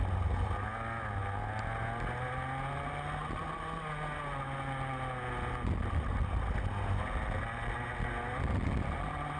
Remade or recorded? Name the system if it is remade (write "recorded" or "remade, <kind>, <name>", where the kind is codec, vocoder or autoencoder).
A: recorded